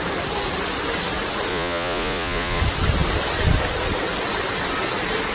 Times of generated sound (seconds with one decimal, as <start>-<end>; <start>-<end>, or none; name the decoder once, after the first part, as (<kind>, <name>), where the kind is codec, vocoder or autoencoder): 1.5-2.6 (vocoder, Vocos)